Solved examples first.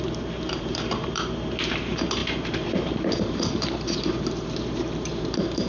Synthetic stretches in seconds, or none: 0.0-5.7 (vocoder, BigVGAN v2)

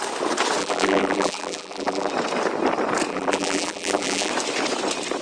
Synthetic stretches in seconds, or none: 0.6-2.1 (vocoder, BigVGAN v2); 3.1-4.3